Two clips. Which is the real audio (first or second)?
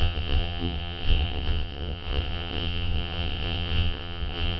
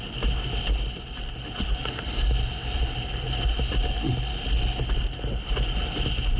second